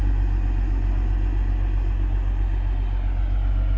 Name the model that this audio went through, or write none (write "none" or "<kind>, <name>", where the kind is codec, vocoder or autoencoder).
none